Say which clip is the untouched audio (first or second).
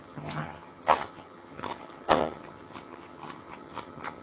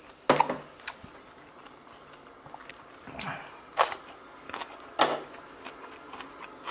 second